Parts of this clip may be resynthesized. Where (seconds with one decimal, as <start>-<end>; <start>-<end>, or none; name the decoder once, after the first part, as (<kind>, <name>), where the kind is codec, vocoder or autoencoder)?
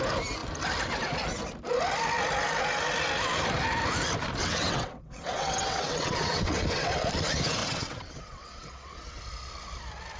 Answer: 4.4-7.0 (vocoder, WaveNeXt); 7.6-9.2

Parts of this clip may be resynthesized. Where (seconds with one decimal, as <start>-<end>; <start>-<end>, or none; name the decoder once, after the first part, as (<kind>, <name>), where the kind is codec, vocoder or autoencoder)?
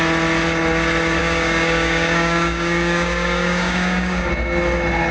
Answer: 1.2-4.3 (codec, DAC)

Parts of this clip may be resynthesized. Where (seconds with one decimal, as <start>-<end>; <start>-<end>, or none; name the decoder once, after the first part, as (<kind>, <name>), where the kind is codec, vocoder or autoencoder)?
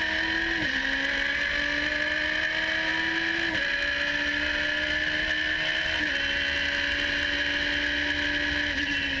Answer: none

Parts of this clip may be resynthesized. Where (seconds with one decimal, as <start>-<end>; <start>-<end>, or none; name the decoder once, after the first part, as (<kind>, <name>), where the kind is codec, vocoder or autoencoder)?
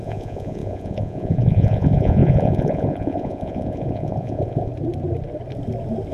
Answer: 0.0-4.7 (vocoder, Vocos)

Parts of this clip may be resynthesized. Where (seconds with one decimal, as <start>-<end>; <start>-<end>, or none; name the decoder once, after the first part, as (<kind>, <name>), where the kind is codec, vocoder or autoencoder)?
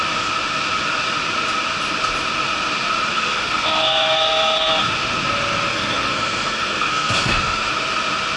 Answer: 3.1-4.7 (codec, SNAC); 5.7-7.6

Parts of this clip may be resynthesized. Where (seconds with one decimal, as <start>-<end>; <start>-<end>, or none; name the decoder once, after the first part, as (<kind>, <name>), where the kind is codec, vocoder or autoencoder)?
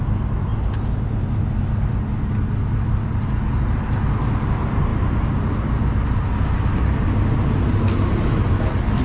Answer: none